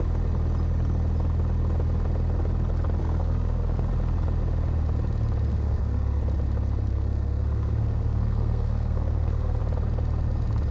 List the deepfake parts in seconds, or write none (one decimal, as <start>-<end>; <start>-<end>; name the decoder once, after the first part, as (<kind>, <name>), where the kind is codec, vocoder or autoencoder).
3.0-3.9 (codec, SNAC); 5.5-6.2; 6.9-9.6